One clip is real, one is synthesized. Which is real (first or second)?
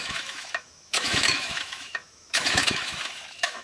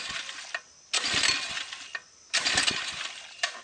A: second